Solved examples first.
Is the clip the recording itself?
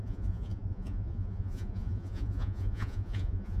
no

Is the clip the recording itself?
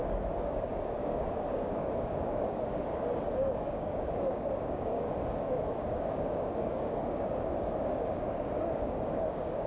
no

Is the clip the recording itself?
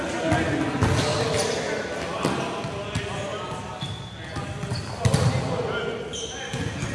yes